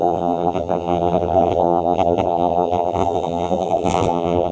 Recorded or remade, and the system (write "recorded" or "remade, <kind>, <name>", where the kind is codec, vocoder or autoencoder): remade, vocoder, BigVGAN v2